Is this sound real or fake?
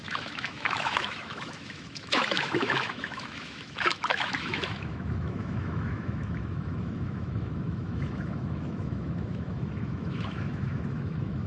fake